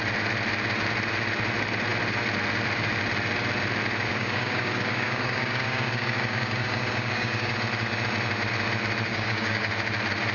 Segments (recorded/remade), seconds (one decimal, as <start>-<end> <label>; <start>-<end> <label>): 0.0-4.1 recorded; 4.1-7.5 remade; 7.5-9.1 recorded; 9.1-9.7 remade; 9.7-10.3 recorded